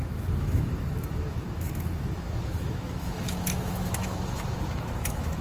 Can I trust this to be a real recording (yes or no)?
no